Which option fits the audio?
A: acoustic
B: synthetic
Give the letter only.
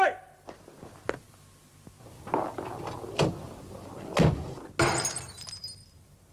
A